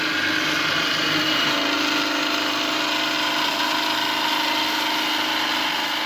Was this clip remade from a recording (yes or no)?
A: no